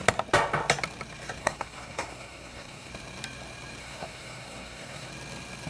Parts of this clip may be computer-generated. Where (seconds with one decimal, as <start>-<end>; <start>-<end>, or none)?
1.4-2.9; 3.8-5.1

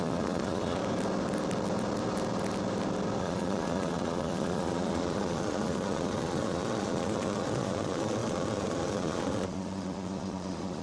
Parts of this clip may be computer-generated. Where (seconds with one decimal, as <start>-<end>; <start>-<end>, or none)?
0.0-0.8; 3.2-10.8

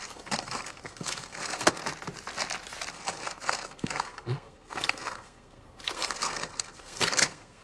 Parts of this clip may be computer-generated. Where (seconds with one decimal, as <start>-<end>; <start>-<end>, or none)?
0.0-1.8; 2.9-7.6

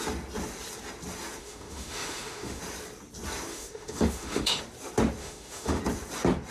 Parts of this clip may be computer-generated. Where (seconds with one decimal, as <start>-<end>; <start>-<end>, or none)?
1.4-2.6; 3.5-4.6; 5.2-5.8

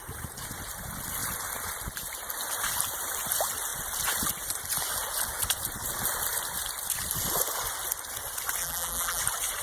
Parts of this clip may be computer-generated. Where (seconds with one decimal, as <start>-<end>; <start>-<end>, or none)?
8.6-9.2

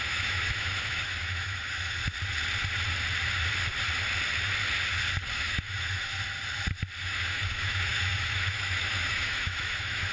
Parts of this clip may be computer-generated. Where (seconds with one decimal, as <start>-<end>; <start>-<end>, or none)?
0.0-2.0; 5.3-6.1; 7.0-10.1

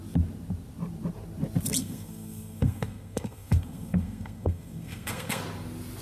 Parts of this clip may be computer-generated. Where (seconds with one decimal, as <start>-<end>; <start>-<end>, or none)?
1.8-5.4

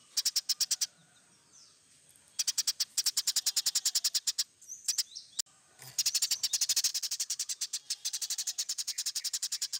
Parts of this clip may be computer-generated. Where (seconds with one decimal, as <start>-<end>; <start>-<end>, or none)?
6.9-9.8